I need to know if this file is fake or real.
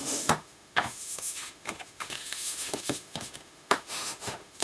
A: fake